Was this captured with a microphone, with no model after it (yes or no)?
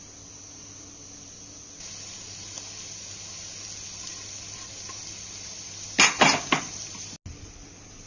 yes